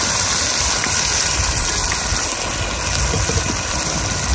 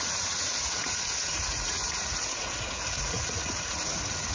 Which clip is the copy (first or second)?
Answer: second